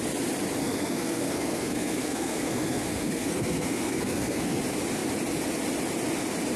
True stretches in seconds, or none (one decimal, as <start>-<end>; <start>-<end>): 0.0-0.6; 4.6-6.6